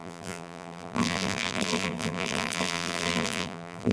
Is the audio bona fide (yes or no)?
no